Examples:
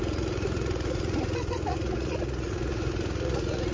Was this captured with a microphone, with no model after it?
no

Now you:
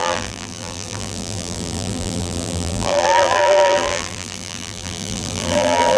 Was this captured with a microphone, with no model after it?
no